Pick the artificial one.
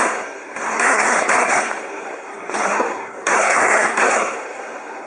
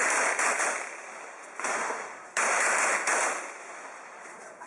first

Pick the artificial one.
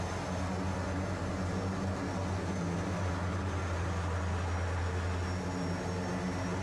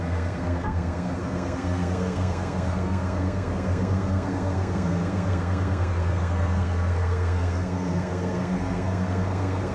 second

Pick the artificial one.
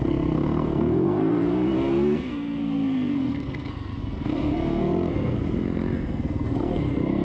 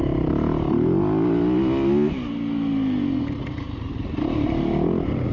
first